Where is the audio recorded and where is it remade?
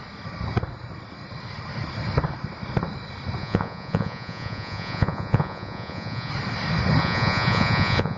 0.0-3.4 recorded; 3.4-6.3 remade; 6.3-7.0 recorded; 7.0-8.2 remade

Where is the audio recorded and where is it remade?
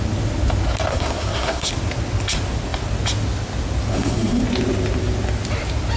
0.0-0.9 recorded; 0.9-1.7 remade; 1.7-3.9 recorded; 3.9-4.4 remade; 4.4-6.0 recorded